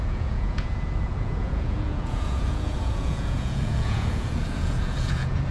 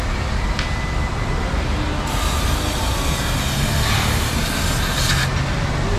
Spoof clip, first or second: first